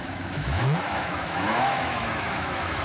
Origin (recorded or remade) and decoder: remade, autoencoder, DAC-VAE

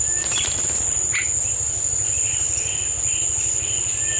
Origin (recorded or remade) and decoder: recorded